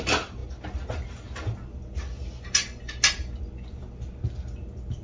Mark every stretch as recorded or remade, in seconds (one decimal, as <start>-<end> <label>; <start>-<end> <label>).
0.0-5.0 recorded